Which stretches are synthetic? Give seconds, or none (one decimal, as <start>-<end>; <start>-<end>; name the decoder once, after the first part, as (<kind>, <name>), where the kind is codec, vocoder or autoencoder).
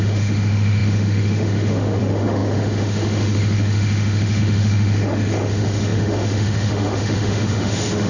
0.0-8.1 (autoencoder, DAC-VAE)